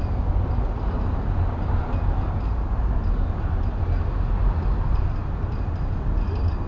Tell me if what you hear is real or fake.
real